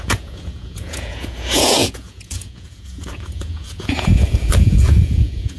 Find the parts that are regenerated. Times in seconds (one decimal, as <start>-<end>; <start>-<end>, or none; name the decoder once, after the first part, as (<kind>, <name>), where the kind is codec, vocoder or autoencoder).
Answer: 0.0-5.6 (vocoder, Vocos)